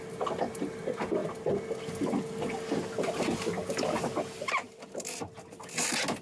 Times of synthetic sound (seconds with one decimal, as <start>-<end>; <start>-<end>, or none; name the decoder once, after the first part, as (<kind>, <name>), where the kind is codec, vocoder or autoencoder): none